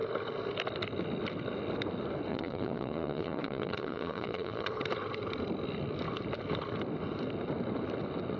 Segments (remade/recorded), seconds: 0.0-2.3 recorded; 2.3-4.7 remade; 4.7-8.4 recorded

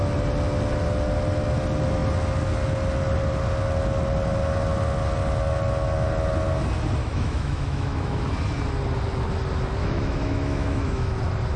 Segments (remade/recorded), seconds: 0.0-7.0 recorded; 7.0-8.2 remade; 8.2-9.8 recorded; 9.8-11.2 remade; 11.2-11.6 recorded

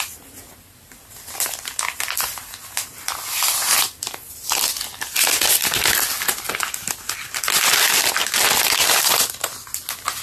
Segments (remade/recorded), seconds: 0.0-10.2 recorded

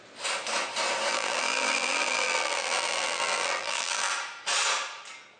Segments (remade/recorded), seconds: 0.0-1.1 recorded; 1.1-4.1 remade; 4.1-5.4 recorded

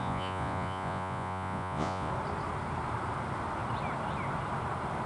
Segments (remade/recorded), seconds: 0.0-2.1 remade; 2.1-5.1 recorded

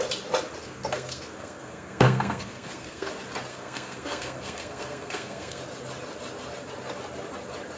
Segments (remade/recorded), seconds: 0.0-0.6 recorded; 0.6-3.1 remade; 3.1-3.5 recorded; 3.5-5.6 remade; 5.6-7.8 recorded

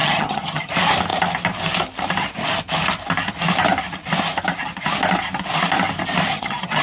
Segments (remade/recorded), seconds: 0.0-0.7 remade; 0.7-6.3 recorded; 6.3-6.8 remade